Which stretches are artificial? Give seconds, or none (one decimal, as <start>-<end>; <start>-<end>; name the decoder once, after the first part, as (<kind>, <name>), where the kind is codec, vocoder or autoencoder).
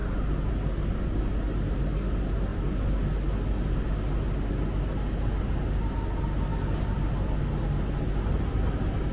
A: none